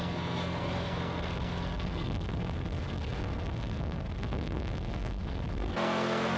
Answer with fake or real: fake